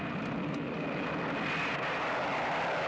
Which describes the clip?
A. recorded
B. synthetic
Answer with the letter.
A